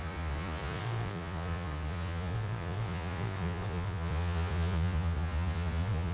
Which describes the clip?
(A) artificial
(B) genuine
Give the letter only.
A